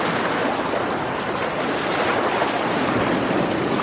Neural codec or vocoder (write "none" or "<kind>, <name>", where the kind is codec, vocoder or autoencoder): none